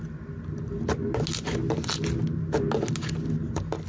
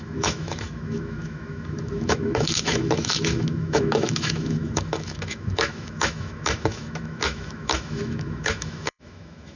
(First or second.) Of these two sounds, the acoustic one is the first